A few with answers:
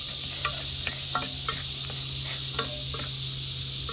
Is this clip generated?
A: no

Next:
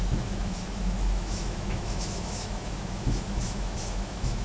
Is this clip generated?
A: yes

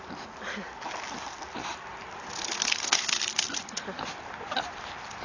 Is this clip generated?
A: no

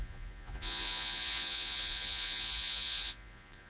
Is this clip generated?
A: yes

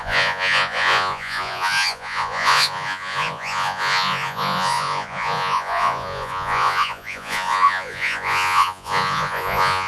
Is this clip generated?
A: yes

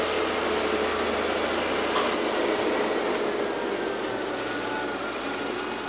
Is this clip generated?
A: no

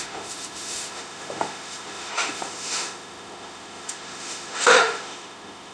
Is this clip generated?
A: yes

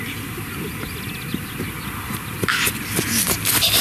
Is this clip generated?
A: no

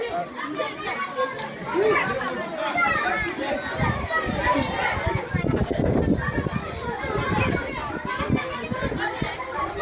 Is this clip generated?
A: no